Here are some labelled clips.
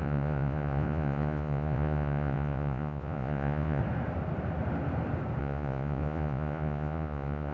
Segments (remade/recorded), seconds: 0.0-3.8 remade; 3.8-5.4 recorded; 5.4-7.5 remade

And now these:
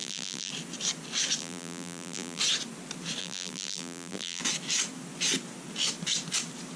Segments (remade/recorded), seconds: 0.0-0.5 remade; 0.5-1.4 recorded; 1.4-2.4 remade; 2.4-3.2 recorded; 3.2-4.4 remade; 4.4-6.8 recorded

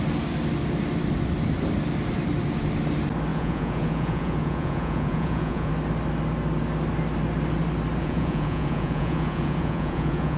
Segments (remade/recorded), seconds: 0.0-3.3 recorded; 3.3-5.7 remade; 5.7-8.0 recorded; 8.0-10.4 remade

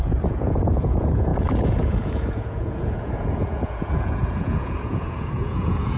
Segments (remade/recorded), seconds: 0.0-6.0 remade

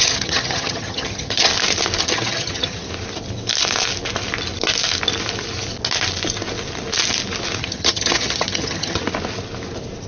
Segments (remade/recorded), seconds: 0.0-1.5 remade; 1.5-2.0 recorded; 2.0-2.9 remade; 2.9-7.6 recorded; 7.6-9.0 remade; 9.0-10.1 recorded

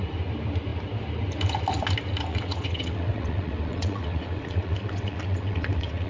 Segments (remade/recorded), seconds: 0.0-2.3 recorded; 2.3-6.1 remade